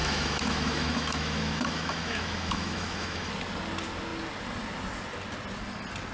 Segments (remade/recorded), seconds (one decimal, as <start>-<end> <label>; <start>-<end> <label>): 0.0-3.3 remade; 3.3-6.1 recorded